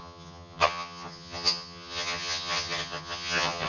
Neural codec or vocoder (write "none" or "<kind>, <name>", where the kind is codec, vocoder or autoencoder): vocoder, HiFi-GAN